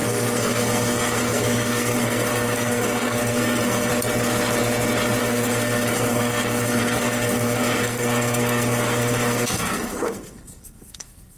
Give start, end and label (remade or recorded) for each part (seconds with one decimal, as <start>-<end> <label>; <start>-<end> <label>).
0.0-3.9 remade; 3.9-5.2 recorded; 5.2-11.4 remade